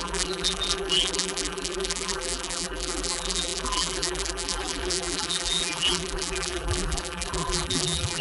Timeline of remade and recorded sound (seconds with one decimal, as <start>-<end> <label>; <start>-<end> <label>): 0.0-8.2 remade